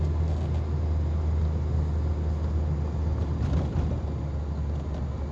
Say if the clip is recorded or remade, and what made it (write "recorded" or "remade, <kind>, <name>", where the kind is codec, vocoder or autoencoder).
recorded